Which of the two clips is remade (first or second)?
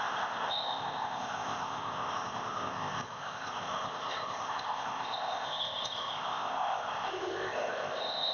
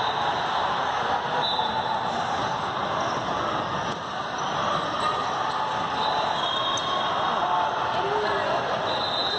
first